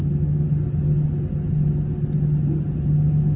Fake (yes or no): no